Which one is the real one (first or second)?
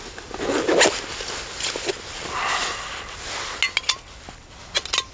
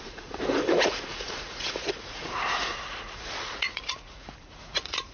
first